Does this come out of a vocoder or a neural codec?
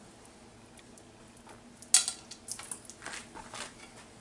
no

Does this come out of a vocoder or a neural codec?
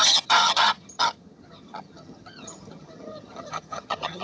yes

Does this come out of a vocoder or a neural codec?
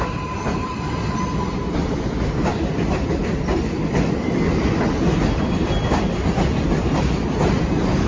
yes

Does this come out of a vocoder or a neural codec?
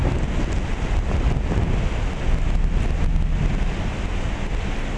no